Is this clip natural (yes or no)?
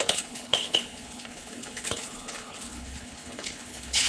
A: no